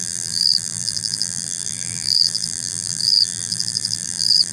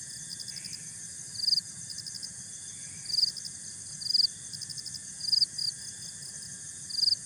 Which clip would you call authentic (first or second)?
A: second